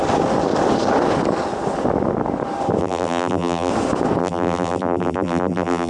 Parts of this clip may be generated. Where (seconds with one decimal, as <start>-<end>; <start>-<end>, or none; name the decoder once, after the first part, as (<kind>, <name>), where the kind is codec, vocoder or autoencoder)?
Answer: 2.8-3.7 (vocoder, BigVGAN v2); 4.2-5.9